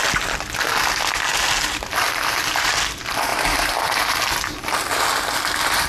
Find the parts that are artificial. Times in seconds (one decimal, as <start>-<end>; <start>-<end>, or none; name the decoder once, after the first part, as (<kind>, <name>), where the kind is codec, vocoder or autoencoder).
3.3-4.2 (vocoder, BigVGAN v2)